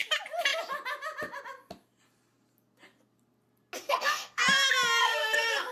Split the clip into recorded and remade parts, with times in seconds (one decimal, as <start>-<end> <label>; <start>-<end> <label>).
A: 0.0-3.8 recorded; 3.8-4.4 remade; 4.4-5.0 recorded; 5.0-5.7 remade